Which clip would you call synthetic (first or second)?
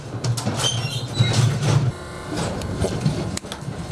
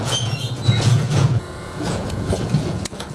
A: second